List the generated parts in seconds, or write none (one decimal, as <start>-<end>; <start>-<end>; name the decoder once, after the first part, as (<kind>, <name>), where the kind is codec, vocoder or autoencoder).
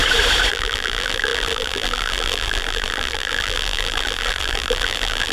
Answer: 0.5-5.3 (vocoder, BigVGAN v2)